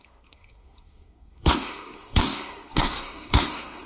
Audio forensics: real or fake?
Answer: fake